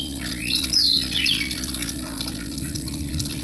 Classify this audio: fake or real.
fake